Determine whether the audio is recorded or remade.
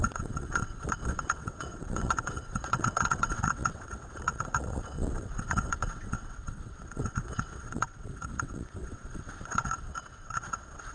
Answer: remade